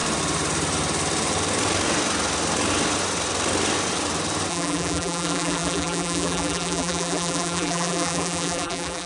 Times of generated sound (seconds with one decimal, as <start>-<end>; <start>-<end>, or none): 4.5-9.1